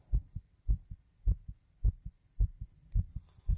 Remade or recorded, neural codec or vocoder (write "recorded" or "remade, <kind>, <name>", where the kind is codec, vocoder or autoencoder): recorded